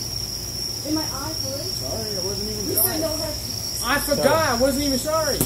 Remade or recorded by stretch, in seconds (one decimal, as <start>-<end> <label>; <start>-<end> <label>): 0.0-3.0 recorded; 3.0-3.7 remade; 3.7-5.5 recorded